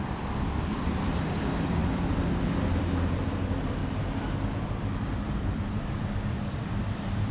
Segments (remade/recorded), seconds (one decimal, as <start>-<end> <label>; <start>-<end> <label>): 0.0-7.3 remade